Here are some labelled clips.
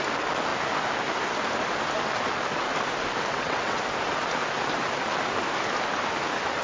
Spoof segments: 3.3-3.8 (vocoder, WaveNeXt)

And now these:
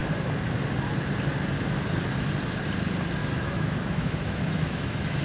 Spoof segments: 3.2-5.2 (autoencoder, DAC-VAE)

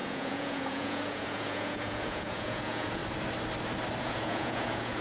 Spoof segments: 0.0-3.0 (vocoder, Vocos); 4.0-5.0